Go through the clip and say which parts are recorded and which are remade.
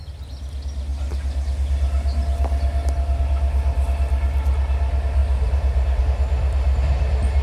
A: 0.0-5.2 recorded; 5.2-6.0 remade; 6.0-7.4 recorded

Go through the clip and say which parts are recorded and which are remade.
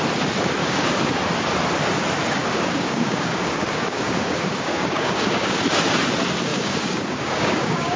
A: 0.0-0.6 recorded; 0.6-1.2 remade; 1.2-2.4 recorded; 2.4-5.6 remade; 5.6-6.5 recorded; 6.5-8.0 remade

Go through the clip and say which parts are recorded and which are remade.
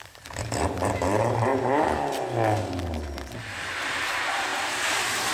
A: 0.0-1.5 remade; 1.5-3.4 recorded; 3.4-5.3 remade